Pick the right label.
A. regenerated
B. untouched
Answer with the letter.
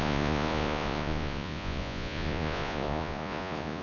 A